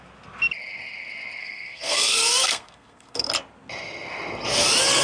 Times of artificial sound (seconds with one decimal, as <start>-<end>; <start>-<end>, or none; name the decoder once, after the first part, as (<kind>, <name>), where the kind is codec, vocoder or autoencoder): 1.4-3.3 (codec, SNAC)

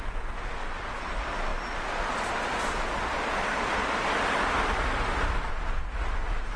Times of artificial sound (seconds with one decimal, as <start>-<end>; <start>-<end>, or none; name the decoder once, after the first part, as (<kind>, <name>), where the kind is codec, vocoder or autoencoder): none